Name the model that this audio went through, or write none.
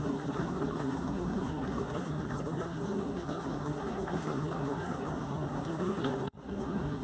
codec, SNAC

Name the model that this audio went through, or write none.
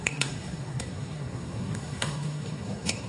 codec, SNAC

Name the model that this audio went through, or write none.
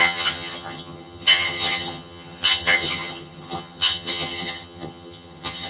vocoder, HiFi-GAN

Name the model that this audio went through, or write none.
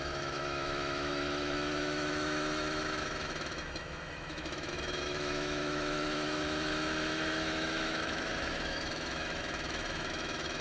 autoencoder, DAC-VAE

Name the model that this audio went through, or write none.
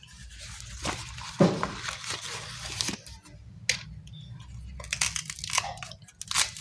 none